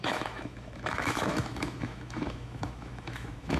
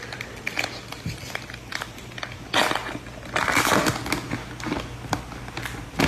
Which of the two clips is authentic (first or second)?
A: second